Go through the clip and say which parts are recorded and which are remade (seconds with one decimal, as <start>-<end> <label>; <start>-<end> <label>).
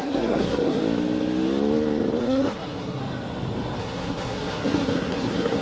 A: 0.0-0.8 remade; 0.8-2.2 recorded; 2.2-3.0 remade; 3.0-3.8 recorded; 3.8-5.6 remade